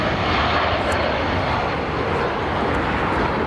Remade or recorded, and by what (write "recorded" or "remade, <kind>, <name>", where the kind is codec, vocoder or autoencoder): recorded